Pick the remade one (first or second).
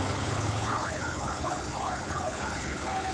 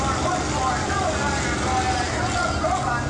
first